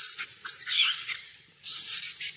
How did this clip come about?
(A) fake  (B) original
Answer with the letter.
B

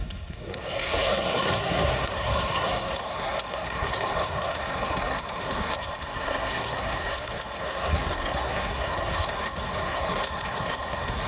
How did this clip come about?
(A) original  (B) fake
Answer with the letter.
B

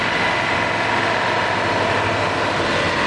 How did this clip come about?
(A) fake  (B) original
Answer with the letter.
B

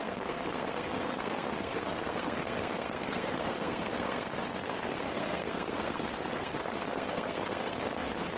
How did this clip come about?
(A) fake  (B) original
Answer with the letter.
A